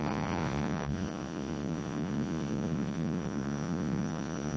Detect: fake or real fake